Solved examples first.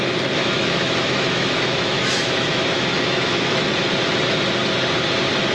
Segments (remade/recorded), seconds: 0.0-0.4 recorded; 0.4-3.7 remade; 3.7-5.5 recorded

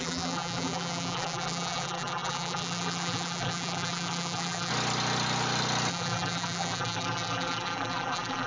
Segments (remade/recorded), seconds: 0.0-4.7 remade; 4.7-5.9 recorded; 5.9-8.5 remade

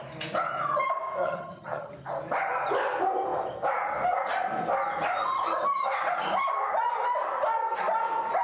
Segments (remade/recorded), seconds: 0.0-1.2 recorded; 1.2-1.9 remade; 1.9-8.4 recorded

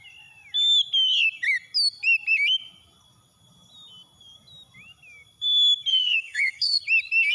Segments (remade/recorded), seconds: 0.0-5.9 recorded; 5.9-6.8 remade; 6.8-7.3 recorded

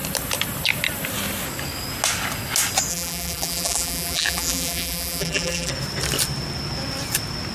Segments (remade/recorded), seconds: 0.0-2.9 recorded; 2.9-5.7 remade; 5.7-7.5 recorded

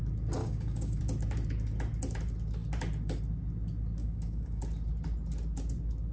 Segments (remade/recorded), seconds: 0.0-0.4 recorded; 0.4-1.0 remade; 1.0-4.0 recorded; 4.0-4.6 remade; 4.6-6.1 recorded